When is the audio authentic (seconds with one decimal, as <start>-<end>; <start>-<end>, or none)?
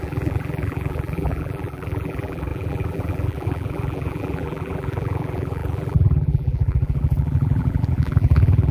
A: none